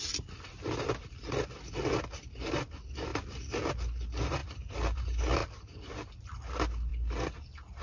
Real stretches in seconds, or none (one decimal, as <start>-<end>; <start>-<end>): 0.0-3.1; 3.7-4.4; 5.0-5.4; 6.1-7.8